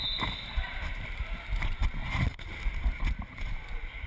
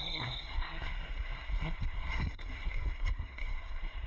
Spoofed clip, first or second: second